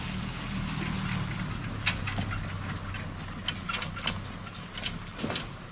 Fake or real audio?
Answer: real